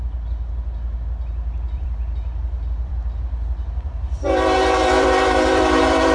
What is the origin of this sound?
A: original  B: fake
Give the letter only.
B